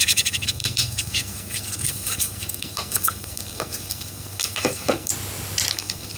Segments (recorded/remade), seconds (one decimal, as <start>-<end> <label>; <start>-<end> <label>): 0.0-5.1 remade; 5.1-5.7 recorded; 5.7-6.2 remade